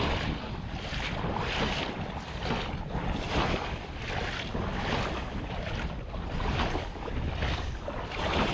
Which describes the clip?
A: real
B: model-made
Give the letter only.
A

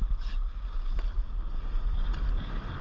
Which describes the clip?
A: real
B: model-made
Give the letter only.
A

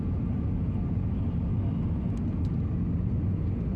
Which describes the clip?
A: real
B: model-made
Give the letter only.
A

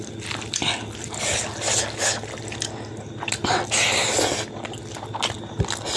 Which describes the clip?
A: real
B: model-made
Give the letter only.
A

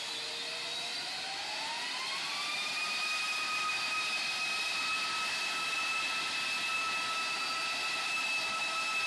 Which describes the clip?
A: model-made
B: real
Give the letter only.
B